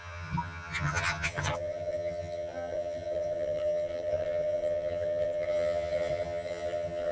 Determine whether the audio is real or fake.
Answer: fake